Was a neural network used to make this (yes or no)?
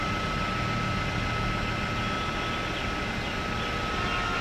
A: no